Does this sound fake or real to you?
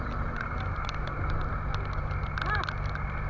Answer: real